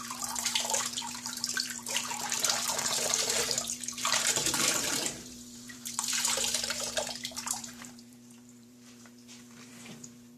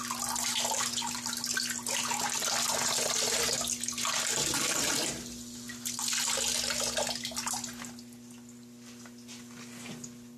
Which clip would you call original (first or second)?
second